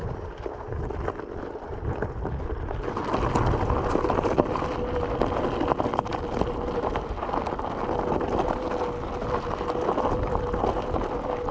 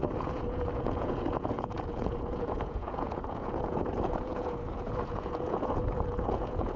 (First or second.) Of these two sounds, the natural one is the first